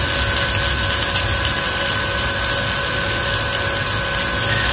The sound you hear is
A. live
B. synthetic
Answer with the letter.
A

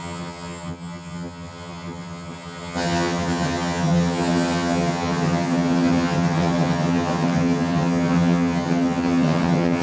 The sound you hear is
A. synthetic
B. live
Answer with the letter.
A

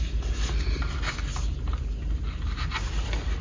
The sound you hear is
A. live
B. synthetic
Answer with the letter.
A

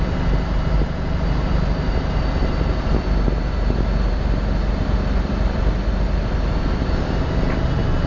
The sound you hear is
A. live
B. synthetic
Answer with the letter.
A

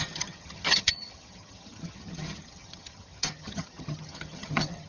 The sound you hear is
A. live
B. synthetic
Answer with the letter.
B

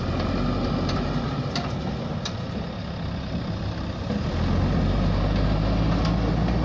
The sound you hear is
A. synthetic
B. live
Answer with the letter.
B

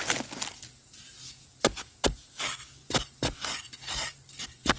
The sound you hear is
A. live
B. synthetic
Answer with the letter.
A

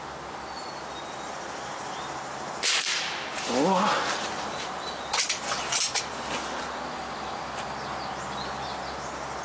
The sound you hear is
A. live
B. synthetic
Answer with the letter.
A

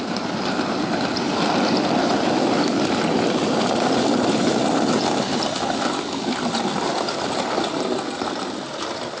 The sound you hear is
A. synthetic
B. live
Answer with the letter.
B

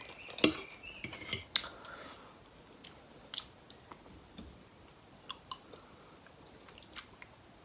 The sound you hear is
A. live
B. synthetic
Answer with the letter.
A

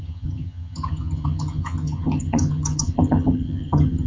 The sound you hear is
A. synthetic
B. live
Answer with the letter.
A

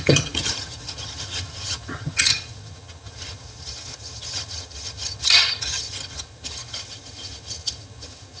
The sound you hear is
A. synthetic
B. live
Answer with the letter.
A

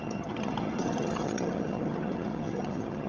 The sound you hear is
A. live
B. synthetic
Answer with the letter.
B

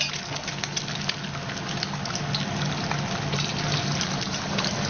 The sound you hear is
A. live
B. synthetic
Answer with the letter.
A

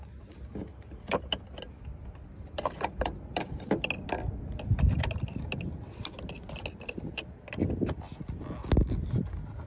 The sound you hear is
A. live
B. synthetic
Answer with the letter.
A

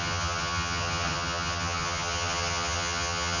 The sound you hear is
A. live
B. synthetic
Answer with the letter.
B